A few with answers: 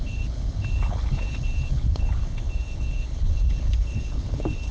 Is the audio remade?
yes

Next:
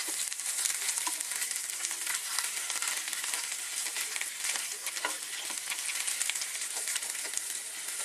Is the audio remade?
no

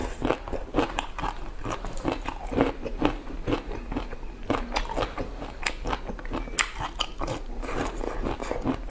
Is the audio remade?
no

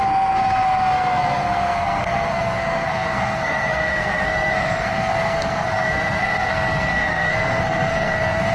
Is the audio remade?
yes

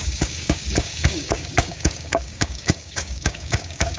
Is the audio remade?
yes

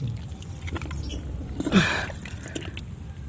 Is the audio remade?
no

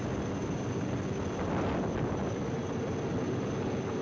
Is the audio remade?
no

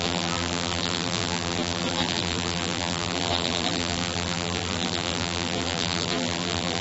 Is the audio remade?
yes